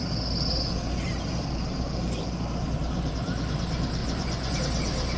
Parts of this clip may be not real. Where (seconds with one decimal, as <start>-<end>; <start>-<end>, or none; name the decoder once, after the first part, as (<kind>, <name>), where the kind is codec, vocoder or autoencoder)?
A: 4.0-4.6 (vocoder, Vocos)